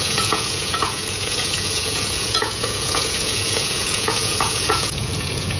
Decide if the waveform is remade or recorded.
remade